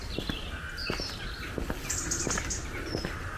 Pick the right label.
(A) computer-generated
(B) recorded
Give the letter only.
B